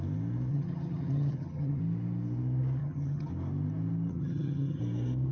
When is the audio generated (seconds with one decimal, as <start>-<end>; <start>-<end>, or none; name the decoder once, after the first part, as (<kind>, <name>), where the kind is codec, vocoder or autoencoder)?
0.5-1.8 (vocoder, HiFi-GAN); 2.8-3.3; 4.1-4.8